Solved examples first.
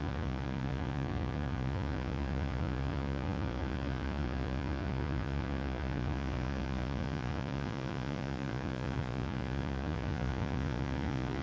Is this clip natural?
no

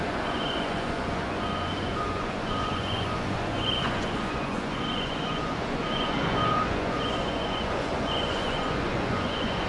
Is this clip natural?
no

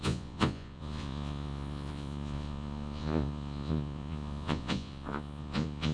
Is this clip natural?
no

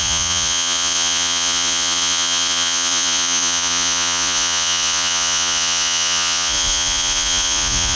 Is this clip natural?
no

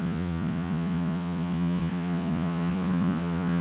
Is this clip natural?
no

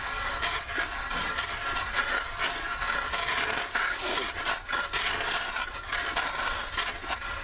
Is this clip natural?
yes